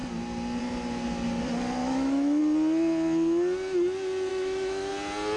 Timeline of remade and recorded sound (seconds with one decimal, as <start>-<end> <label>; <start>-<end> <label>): 0.0-1.8 recorded; 1.8-2.4 remade; 2.4-4.3 recorded; 4.3-4.9 remade; 4.9-5.4 recorded